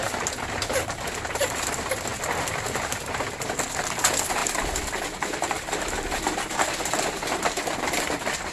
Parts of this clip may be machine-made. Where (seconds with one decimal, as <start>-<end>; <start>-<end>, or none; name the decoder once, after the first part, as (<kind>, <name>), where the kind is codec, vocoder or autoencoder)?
none